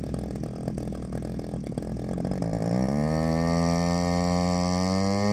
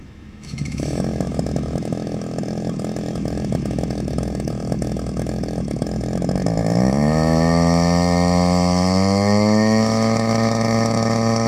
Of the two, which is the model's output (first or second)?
second